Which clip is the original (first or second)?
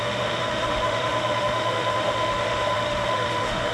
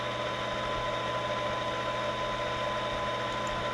second